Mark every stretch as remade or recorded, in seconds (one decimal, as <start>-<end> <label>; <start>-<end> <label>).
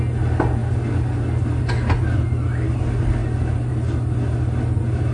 0.0-5.1 recorded